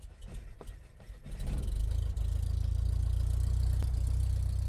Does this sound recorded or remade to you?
recorded